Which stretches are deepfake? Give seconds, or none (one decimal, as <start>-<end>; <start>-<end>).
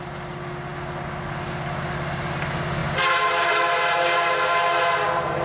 none